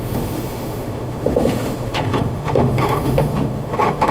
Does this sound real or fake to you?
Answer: fake